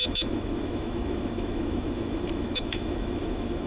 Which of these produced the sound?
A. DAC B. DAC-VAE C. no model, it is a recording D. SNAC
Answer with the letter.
B